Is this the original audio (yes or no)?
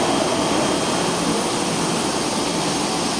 yes